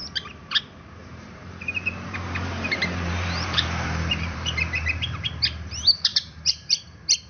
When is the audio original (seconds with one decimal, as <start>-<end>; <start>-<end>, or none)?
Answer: 0.0-1.0; 5.3-6.1; 6.8-7.3